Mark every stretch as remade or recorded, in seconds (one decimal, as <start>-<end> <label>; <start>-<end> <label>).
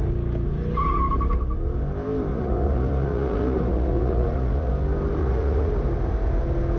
0.0-2.3 recorded; 2.3-4.7 remade; 4.7-5.2 recorded; 5.2-5.7 remade; 5.7-6.8 recorded